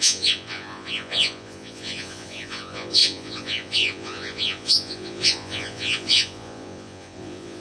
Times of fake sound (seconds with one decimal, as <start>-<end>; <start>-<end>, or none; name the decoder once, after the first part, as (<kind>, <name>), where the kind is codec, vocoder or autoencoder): 0.0-7.6 (vocoder, Vocos)